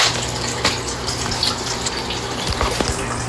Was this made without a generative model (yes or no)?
yes